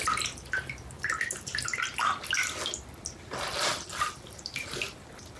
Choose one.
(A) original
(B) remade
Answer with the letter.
A